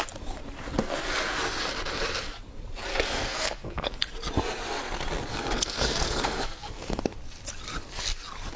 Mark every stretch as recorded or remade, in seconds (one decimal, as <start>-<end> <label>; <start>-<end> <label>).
0.0-2.9 recorded; 2.9-3.9 remade; 3.9-5.3 recorded; 5.3-7.0 remade; 7.0-8.6 recorded